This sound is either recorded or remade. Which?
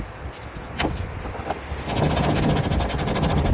recorded